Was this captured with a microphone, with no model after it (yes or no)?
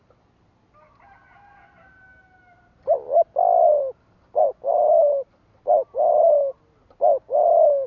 yes